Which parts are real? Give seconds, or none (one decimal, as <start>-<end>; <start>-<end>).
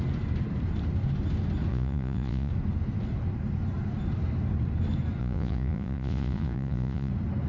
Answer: 0.0-1.7; 2.5-5.2; 7.1-7.5